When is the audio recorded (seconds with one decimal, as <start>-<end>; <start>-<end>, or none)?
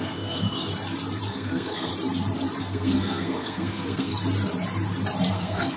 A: 0.7-1.3; 1.9-2.6; 4.1-5.3